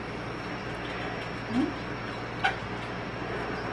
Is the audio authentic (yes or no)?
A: yes